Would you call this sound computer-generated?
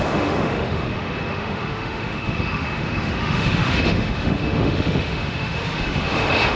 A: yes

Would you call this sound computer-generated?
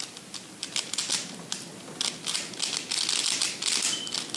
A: no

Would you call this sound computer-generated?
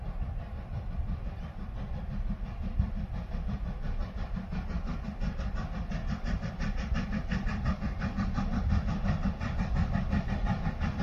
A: no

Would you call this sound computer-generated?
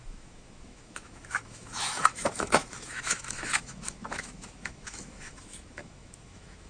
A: yes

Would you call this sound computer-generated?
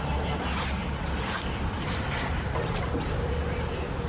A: no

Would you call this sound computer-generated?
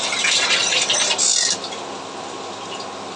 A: no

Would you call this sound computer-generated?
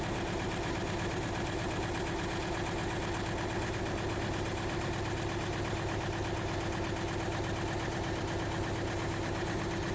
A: no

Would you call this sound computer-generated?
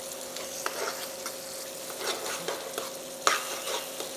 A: no